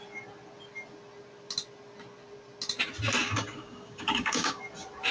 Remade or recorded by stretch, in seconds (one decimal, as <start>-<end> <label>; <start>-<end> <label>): 0.0-3.2 recorded; 3.2-4.6 remade; 4.6-5.1 recorded